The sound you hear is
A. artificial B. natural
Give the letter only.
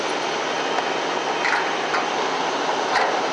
B